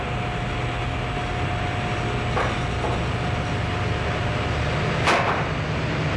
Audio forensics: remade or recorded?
recorded